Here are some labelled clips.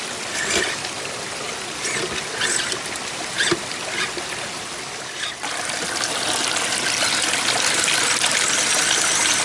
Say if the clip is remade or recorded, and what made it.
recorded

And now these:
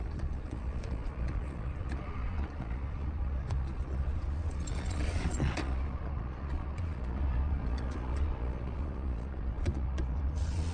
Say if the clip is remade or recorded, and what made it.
remade, vocoder, Vocos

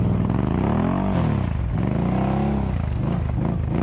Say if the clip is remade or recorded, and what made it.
recorded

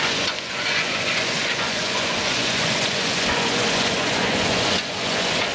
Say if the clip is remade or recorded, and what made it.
remade, vocoder, Vocos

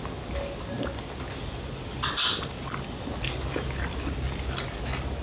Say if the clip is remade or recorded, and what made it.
recorded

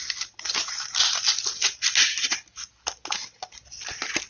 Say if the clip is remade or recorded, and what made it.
recorded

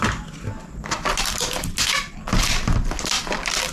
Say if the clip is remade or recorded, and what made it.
recorded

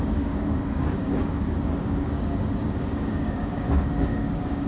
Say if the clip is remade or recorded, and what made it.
remade, codec, DAC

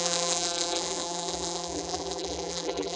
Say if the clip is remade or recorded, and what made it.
remade, vocoder, BigVGAN v2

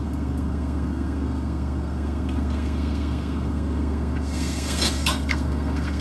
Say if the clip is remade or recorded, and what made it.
remade, codec, SNAC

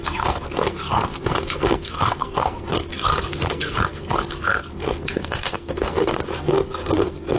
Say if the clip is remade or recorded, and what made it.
remade, codec, SNAC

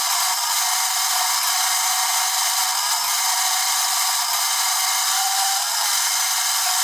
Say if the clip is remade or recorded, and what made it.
recorded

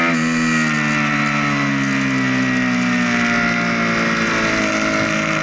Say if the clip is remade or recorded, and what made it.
recorded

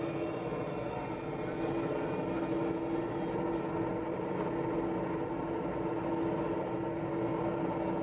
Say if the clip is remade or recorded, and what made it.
recorded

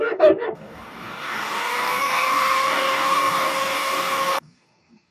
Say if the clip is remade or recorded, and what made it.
remade, codec, DAC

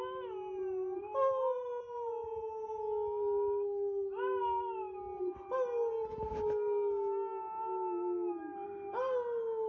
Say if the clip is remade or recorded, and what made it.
recorded